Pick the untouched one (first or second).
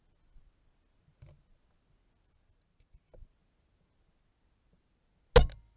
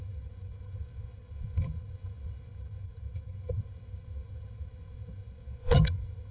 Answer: first